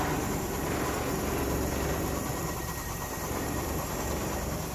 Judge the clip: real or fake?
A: fake